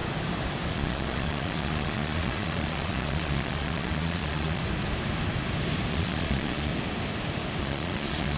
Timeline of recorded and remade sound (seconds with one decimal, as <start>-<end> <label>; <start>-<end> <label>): 0.0-0.7 recorded; 0.7-4.6 remade; 4.6-5.9 recorded; 5.9-6.7 remade; 6.7-7.6 recorded; 7.6-8.4 remade

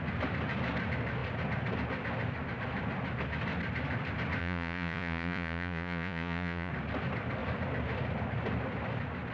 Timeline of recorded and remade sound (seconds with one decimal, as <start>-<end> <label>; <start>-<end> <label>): 0.0-4.4 recorded; 4.4-6.7 remade; 6.7-9.3 recorded

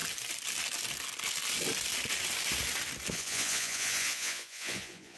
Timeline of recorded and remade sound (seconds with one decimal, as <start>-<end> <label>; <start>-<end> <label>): 0.0-3.1 recorded; 3.1-5.2 remade

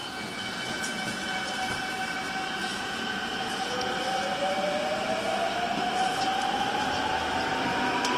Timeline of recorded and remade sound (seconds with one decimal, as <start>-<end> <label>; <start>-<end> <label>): 0.0-1.9 remade; 1.9-2.6 recorded; 2.6-3.9 remade; 3.9-8.2 recorded

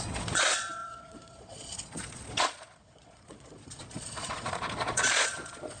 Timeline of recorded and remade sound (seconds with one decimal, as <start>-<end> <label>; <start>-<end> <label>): 0.0-5.8 remade

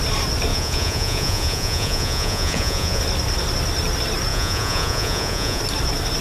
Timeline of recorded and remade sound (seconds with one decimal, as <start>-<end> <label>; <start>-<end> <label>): 0.0-0.5 recorded; 0.5-3.0 remade; 3.0-4.3 recorded; 4.3-5.6 remade; 5.6-6.2 recorded

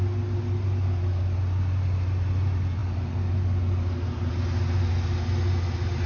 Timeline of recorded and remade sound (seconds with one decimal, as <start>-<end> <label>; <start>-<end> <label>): 0.0-6.1 recorded